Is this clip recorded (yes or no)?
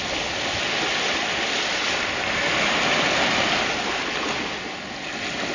yes